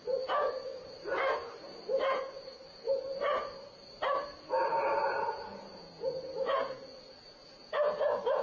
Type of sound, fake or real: real